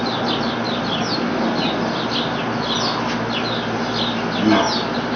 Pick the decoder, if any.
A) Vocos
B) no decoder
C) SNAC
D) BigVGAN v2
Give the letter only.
B